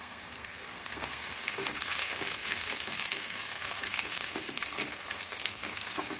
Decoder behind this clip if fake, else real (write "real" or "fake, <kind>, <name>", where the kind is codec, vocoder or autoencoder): fake, codec, SNAC